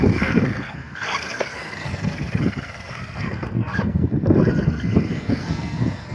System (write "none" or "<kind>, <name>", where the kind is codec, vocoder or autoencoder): codec, SNAC